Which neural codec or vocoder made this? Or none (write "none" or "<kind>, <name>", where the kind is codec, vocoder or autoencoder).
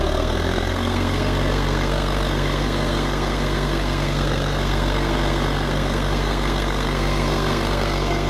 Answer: codec, SNAC